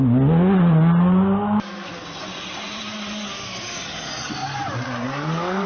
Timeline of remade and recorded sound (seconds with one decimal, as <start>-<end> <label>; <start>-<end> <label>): 0.0-4.4 recorded; 4.4-5.7 remade